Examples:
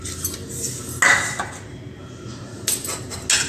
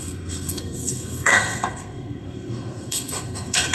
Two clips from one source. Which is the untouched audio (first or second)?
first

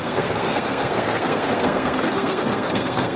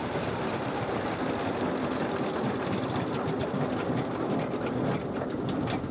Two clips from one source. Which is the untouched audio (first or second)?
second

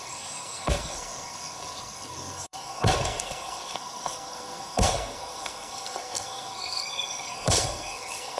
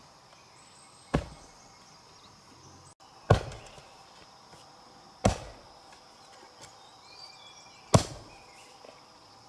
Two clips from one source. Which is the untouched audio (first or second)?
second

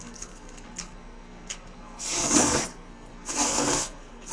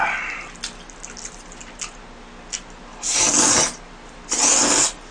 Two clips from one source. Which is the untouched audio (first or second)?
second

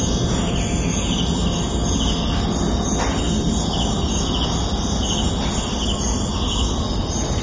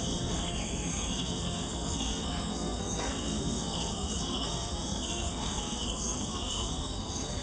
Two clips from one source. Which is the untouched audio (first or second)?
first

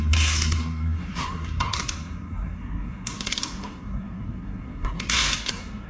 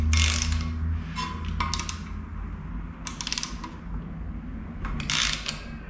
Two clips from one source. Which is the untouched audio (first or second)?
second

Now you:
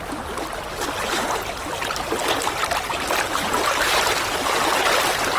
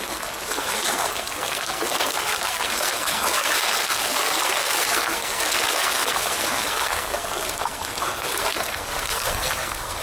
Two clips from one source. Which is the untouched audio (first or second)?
first